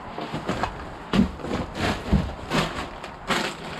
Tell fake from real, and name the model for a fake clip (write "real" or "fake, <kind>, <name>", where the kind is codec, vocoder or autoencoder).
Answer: real